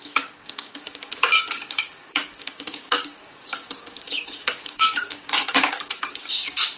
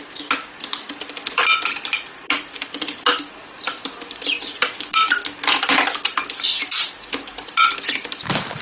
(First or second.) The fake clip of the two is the first